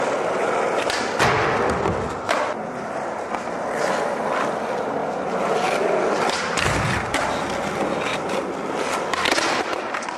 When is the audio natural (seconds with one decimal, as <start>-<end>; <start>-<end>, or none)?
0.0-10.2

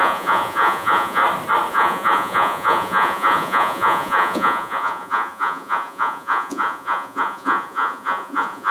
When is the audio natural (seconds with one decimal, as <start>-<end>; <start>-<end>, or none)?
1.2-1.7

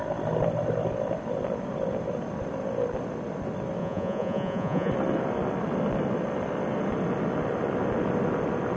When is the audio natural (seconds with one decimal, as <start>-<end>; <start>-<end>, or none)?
0.0-3.8; 4.9-8.8